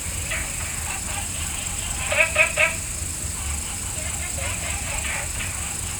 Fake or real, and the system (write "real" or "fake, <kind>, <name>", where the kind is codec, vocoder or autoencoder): real